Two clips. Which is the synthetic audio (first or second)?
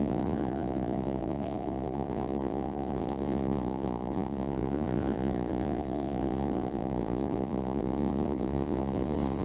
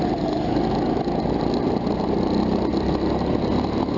first